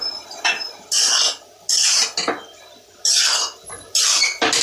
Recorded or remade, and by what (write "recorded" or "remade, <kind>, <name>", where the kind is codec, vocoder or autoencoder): recorded